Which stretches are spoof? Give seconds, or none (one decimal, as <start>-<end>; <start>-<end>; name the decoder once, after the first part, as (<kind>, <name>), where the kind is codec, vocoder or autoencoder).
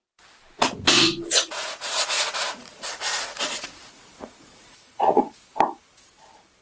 1.3-5.3 (vocoder, Vocos)